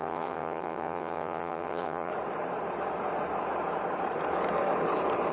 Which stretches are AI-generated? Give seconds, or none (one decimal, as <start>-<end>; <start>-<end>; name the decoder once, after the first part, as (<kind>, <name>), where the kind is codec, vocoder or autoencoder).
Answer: 0.0-2.1 (vocoder, HiFi-GAN)